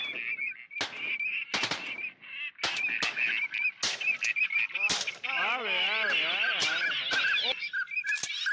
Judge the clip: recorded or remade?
recorded